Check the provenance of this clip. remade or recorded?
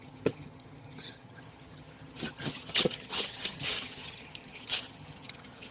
remade